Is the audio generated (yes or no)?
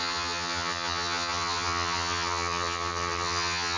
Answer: yes